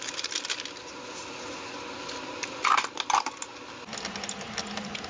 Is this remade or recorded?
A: recorded